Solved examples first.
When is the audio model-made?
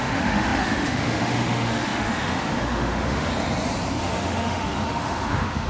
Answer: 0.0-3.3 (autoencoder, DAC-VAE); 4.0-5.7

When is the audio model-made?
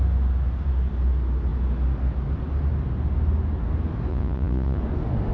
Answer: 4.1-4.8 (vocoder, Vocos)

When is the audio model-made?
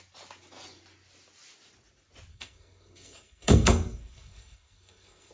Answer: 2.3-5.3 (codec, SNAC)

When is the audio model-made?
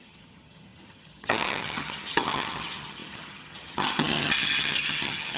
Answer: 0.0-5.4 (vocoder, HiFi-GAN)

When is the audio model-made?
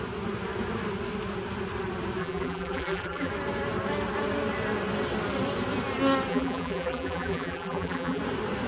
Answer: 2.2-3.3 (vocoder, BigVGAN v2); 6.3-8.2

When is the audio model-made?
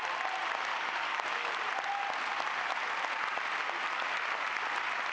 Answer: 0.7-1.5 (codec, DAC)